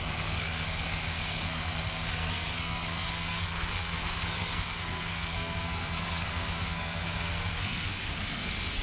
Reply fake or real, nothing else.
fake